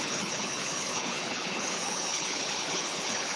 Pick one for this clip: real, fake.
fake